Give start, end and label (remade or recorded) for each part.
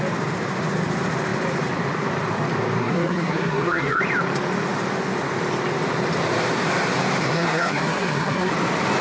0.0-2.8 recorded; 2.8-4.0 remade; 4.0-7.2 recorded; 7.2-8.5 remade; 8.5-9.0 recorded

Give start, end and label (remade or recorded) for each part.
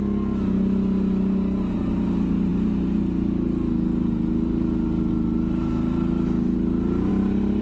0.0-7.6 recorded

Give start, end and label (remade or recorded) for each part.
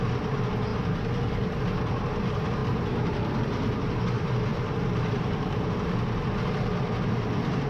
0.0-0.7 recorded; 0.7-1.6 remade; 1.6-4.5 recorded; 4.5-5.6 remade; 5.6-7.7 recorded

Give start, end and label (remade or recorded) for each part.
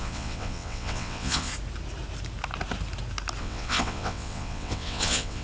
0.0-1.5 remade; 1.5-3.4 recorded; 3.4-5.4 remade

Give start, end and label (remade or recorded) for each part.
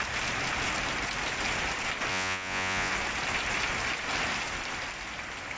0.0-2.1 recorded; 2.1-2.9 remade; 2.9-5.6 recorded